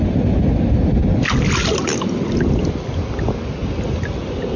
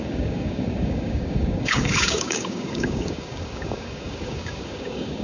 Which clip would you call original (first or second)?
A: first